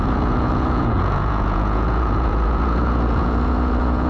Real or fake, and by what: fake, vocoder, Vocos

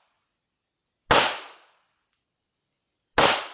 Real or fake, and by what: real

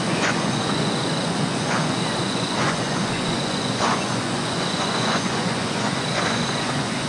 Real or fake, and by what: fake, vocoder, Vocos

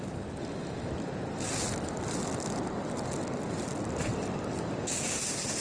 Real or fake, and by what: real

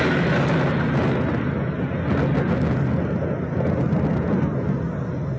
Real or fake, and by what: real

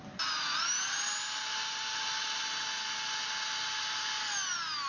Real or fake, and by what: real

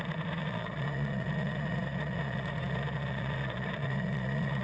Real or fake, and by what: fake, vocoder, Vocos